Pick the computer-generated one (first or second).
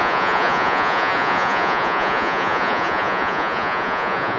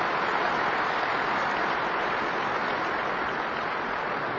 first